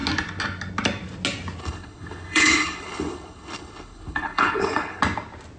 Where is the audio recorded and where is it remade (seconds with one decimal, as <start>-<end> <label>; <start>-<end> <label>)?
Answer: 0.0-1.6 recorded; 1.6-5.0 remade; 5.0-5.6 recorded